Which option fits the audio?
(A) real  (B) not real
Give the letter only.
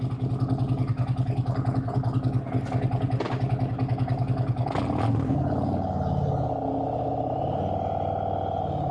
A